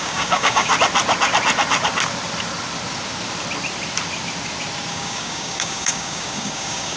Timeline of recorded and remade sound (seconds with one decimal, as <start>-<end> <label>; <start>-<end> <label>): 0.0-0.7 remade; 0.7-4.9 recorded; 4.9-7.0 remade